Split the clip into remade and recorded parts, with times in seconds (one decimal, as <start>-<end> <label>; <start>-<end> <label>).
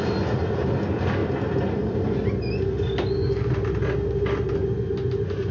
0.0-5.5 recorded